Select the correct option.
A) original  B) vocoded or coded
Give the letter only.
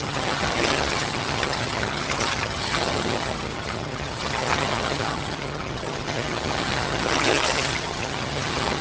B